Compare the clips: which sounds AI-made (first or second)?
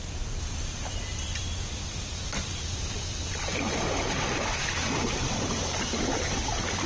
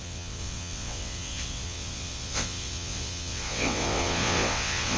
second